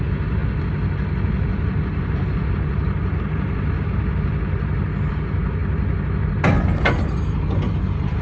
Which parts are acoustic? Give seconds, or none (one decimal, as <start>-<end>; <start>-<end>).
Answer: 0.0-8.2